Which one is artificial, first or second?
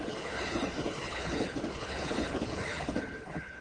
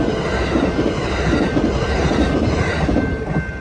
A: first